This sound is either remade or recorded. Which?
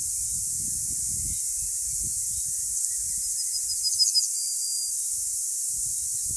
recorded